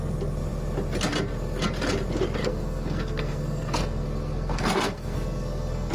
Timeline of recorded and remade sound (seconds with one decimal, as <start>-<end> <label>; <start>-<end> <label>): 0.0-2.4 recorded; 2.4-5.9 remade